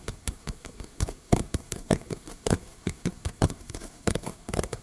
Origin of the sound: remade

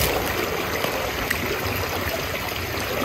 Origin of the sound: recorded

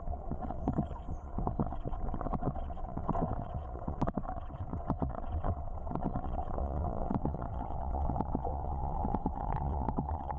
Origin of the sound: remade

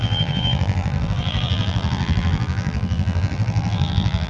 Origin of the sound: remade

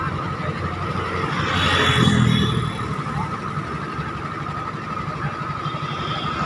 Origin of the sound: recorded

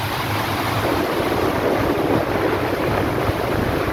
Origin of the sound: recorded